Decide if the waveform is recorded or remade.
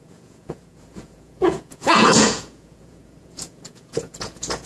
remade